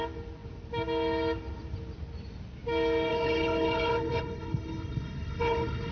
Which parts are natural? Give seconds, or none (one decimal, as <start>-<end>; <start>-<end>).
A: 0.0-3.1